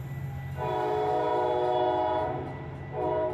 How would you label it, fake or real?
real